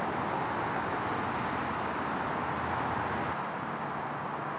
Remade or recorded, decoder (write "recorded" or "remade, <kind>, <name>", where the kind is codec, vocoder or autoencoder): recorded